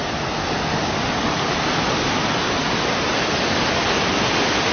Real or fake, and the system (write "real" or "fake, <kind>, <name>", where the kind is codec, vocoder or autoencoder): real